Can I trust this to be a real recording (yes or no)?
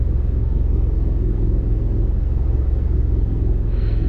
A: no